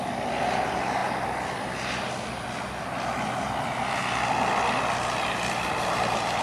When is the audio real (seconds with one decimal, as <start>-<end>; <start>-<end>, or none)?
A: 0.0-6.4